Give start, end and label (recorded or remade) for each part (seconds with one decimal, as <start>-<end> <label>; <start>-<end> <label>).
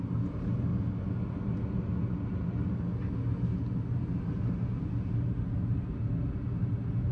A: 0.0-0.7 remade; 0.7-3.9 recorded; 3.9-7.1 remade